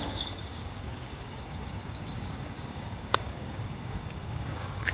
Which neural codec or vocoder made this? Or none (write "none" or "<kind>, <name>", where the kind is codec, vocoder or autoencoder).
codec, DAC